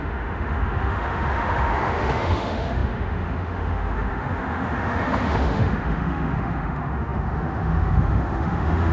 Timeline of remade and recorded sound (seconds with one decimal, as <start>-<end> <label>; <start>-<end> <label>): 0.0-8.9 remade